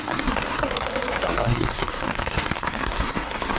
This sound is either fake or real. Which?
fake